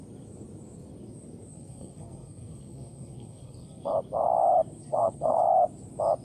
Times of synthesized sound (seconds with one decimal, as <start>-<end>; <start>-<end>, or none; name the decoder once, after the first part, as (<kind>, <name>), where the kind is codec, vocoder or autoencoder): 1.5-3.9 (codec, SNAC); 4.8-5.4